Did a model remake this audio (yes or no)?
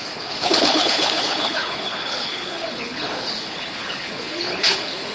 yes